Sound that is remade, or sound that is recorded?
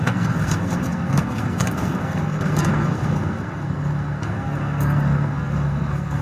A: remade